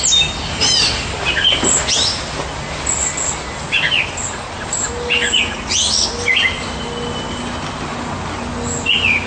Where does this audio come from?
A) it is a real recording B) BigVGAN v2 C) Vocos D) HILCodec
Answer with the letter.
A